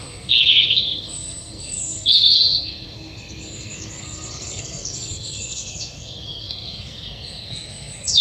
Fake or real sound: fake